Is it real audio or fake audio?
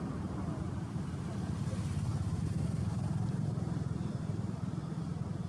fake